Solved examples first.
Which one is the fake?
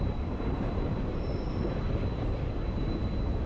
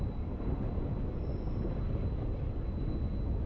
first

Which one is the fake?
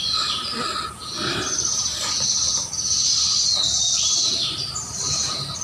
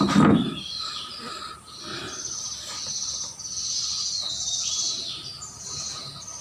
first